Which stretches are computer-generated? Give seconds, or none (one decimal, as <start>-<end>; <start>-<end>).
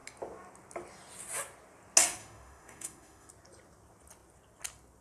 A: 2.2-3.3